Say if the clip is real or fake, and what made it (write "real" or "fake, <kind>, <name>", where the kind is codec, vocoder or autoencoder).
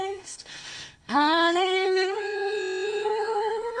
fake, codec, SNAC